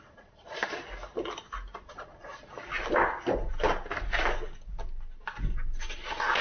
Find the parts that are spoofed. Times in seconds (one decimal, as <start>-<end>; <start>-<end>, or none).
0.0-0.6; 1.8-2.3